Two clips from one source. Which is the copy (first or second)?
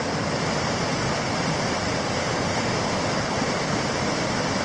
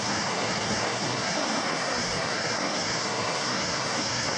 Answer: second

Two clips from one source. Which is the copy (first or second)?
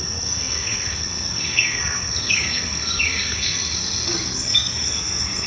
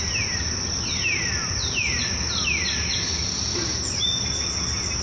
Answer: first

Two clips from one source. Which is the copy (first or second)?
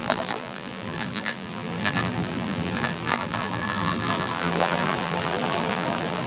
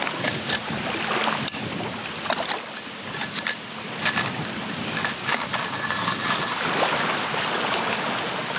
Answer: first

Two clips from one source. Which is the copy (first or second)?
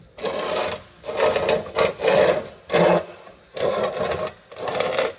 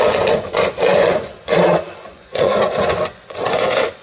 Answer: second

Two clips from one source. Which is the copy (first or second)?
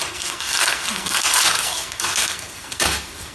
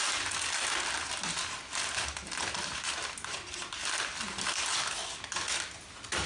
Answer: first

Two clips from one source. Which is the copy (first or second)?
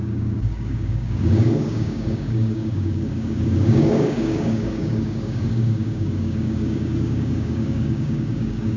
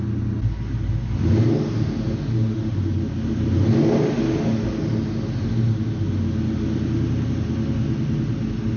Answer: first